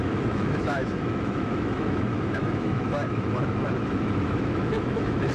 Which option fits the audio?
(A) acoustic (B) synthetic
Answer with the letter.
B